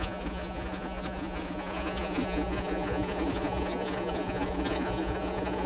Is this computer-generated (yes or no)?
yes